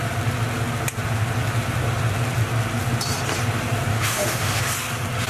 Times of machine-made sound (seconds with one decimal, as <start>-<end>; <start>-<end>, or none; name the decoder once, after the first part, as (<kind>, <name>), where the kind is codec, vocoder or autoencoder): 3.9-4.6 (autoencoder, DAC-VAE)